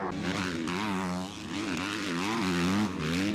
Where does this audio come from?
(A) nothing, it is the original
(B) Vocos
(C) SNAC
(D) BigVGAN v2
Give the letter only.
A